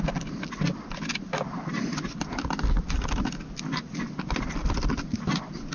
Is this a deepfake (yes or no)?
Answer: no